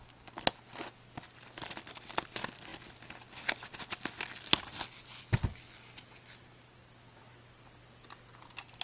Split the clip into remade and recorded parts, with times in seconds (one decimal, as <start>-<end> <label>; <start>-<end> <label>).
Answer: 0.0-8.8 recorded